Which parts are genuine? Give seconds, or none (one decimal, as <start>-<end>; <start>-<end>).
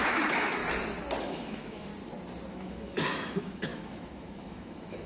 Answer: 0.6-1.2; 1.9-2.5